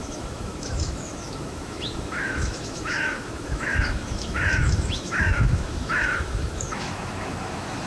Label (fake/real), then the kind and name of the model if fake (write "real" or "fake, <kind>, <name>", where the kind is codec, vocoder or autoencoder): fake, autoencoder, DAC-VAE